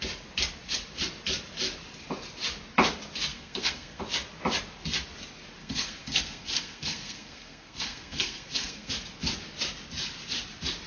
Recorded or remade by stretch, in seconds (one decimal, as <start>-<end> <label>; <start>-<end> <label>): 0.0-3.3 recorded; 3.3-4.0 remade; 4.0-5.6 recorded; 5.6-8.9 remade; 8.9-10.9 recorded